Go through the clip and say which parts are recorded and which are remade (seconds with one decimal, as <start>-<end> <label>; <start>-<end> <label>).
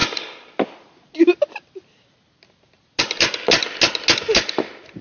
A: 0.0-5.0 recorded